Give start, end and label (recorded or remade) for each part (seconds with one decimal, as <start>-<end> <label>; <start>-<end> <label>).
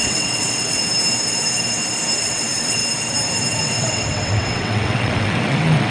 0.0-0.8 remade; 0.8-2.2 recorded; 2.2-2.8 remade; 2.8-3.6 recorded; 3.6-5.9 remade